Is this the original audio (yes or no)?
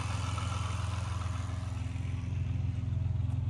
yes